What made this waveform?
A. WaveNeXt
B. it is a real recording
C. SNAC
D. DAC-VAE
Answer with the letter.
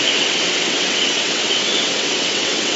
A